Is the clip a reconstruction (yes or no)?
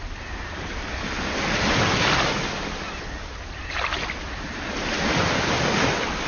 no